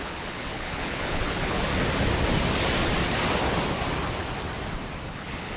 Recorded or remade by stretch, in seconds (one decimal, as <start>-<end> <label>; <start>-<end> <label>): 0.0-1.7 remade; 1.7-5.1 recorded; 5.1-5.6 remade